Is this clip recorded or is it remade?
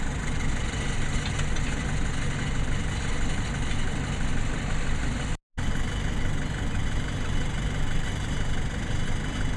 recorded